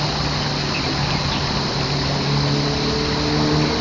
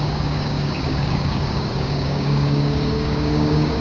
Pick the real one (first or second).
first